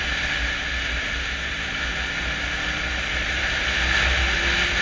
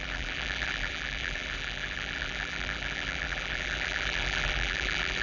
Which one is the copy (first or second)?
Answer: second